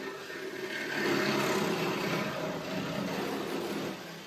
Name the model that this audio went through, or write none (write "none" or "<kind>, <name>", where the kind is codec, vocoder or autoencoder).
none